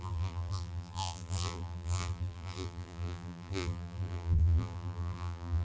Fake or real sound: fake